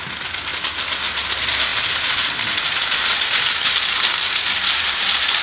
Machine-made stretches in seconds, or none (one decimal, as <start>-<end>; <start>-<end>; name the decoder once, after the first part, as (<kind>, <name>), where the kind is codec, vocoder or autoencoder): none